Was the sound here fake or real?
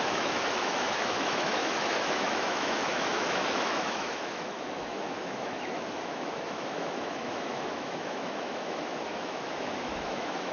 fake